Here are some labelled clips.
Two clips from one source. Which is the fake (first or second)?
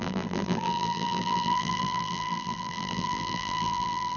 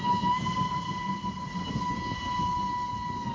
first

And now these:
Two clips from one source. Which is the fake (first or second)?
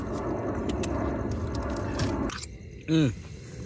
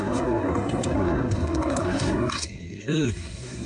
second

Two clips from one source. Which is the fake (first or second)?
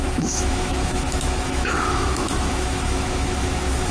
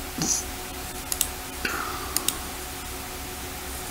first